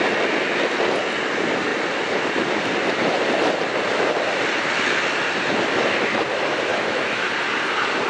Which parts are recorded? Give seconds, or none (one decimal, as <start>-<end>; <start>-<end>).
0.0-6.7; 7.3-8.1